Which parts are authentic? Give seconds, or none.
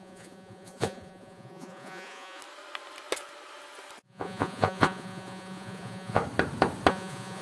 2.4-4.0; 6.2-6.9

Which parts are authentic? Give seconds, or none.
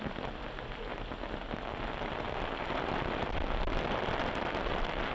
0.0-5.1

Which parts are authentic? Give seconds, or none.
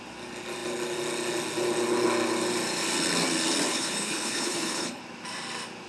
0.0-3.7; 5.0-5.9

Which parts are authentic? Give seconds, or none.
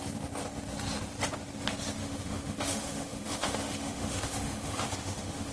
0.0-2.0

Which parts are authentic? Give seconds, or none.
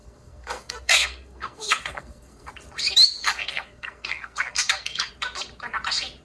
2.5-3.2; 5.1-6.2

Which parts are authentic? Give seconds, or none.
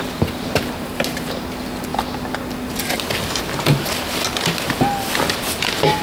1.9-5.3